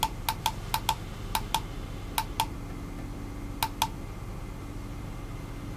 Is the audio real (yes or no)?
yes